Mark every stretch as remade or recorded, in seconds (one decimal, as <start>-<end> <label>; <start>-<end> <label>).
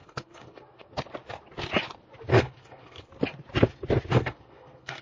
0.0-0.9 remade; 0.9-2.3 recorded; 2.3-3.1 remade; 3.1-4.1 recorded; 4.1-5.0 remade